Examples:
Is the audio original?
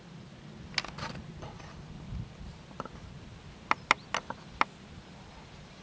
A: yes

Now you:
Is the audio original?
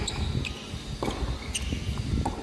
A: yes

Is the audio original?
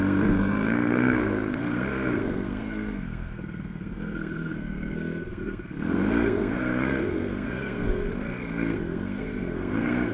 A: no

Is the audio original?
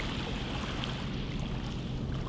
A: yes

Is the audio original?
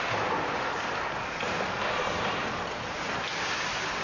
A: yes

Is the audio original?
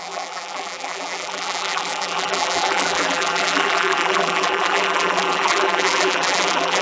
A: no